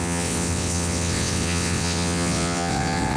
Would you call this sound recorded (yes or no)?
no